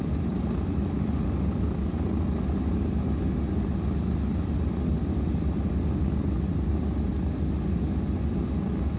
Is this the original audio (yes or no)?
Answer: yes